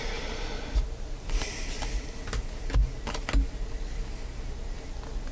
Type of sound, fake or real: real